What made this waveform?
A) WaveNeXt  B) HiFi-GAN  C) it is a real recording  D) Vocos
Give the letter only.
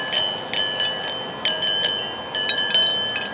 C